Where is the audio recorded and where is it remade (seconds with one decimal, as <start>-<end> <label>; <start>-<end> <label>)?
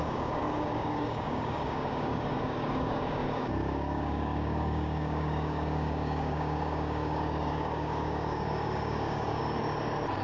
0.0-9.4 remade; 9.4-10.2 recorded